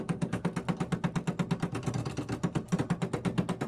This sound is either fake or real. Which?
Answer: real